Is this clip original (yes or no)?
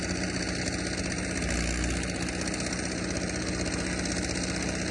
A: yes